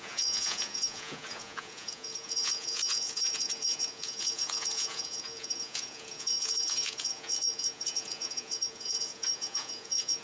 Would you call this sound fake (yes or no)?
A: yes